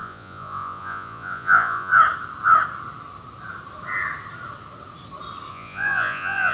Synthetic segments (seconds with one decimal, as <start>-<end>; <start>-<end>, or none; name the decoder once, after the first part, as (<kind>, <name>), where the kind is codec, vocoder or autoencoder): 0.0-1.9 (vocoder, Vocos); 5.5-6.5